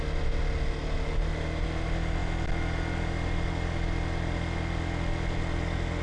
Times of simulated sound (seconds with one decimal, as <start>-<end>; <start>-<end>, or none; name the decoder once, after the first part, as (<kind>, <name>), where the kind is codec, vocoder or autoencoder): none